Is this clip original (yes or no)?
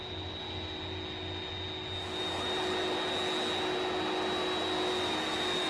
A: yes